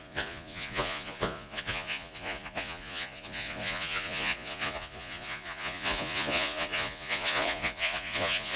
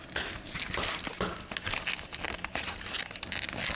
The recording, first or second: second